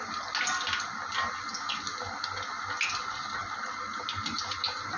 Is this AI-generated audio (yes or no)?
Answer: no